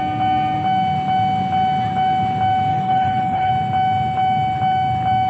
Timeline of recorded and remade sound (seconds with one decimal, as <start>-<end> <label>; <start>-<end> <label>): 0.0-2.7 recorded; 2.7-3.5 remade; 3.5-5.3 recorded